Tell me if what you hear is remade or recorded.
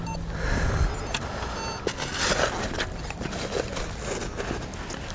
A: recorded